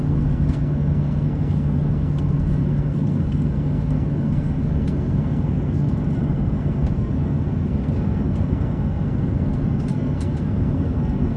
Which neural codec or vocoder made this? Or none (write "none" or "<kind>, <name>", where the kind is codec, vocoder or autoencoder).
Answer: codec, SNAC